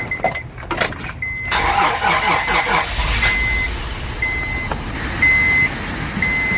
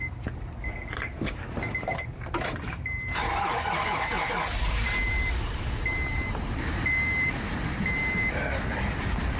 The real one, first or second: first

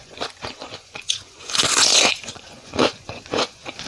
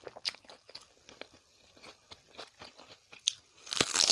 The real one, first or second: second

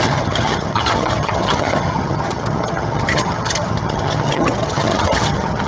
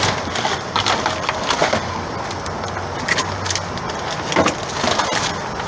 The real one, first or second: second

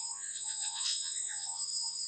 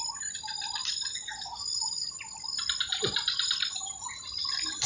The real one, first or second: second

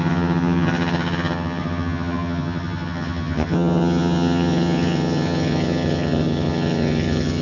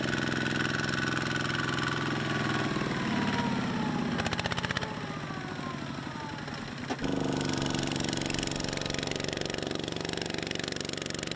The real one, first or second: second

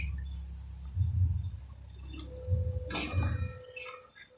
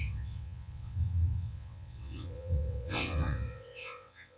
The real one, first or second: first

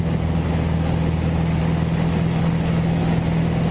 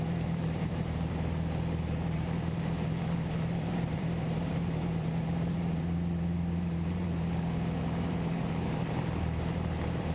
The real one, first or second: first